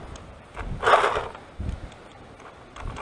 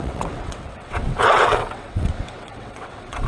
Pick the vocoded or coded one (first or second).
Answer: second